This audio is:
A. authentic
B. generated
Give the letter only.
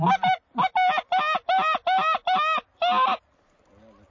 A